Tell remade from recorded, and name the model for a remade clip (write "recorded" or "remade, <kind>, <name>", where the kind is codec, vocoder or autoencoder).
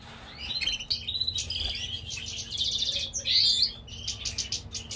recorded